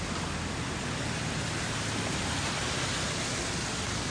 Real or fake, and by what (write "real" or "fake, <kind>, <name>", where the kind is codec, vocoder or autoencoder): real